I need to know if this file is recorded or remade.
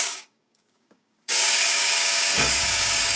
remade